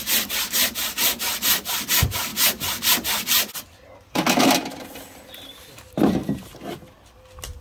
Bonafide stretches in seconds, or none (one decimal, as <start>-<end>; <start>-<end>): 0.0-7.6